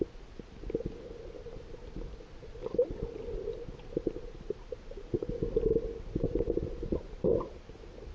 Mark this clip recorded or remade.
recorded